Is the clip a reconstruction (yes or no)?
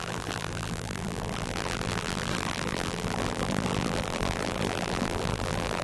yes